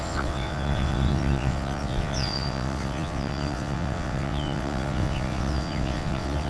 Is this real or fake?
fake